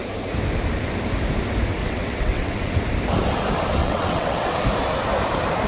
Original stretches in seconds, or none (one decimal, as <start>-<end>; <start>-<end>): 0.0-1.8; 2.8-3.8; 4.5-5.7